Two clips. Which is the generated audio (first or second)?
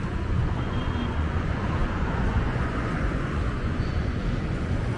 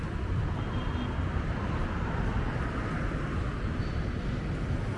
first